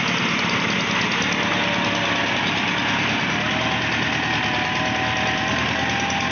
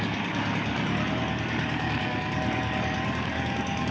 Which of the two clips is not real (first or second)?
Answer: second